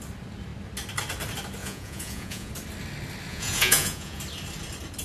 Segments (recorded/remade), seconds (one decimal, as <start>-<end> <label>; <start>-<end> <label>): 0.0-1.6 recorded; 1.6-2.5 remade; 2.5-3.3 recorded; 3.3-4.2 remade; 4.2-5.0 recorded